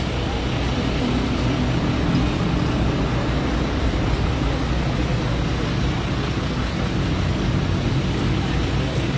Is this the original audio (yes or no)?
yes